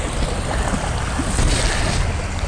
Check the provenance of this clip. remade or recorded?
recorded